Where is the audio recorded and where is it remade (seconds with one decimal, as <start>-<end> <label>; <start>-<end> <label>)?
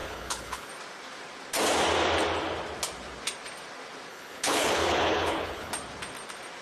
0.0-0.7 remade; 0.7-4.1 recorded; 4.1-5.7 remade; 5.7-6.6 recorded